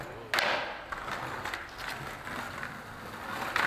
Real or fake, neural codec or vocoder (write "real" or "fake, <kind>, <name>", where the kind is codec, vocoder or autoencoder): real